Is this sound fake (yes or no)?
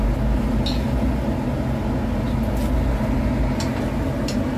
no